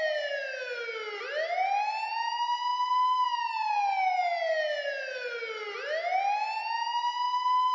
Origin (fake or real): real